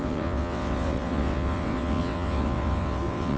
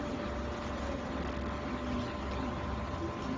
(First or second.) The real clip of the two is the second